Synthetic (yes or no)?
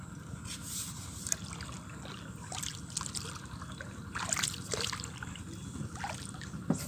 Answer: no